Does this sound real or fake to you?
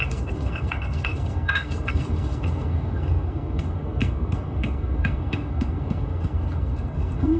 fake